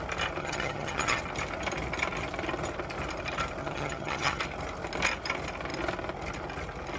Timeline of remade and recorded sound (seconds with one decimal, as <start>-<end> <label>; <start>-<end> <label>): 0.0-0.4 recorded; 0.4-1.2 remade; 1.2-3.6 recorded; 3.6-4.4 remade; 4.4-7.0 recorded